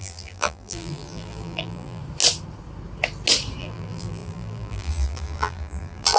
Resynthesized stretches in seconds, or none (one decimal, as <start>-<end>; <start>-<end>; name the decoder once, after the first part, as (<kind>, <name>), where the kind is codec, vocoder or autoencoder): 0.0-2.0 (vocoder, BigVGAN v2); 3.6-6.2